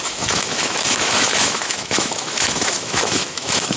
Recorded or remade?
remade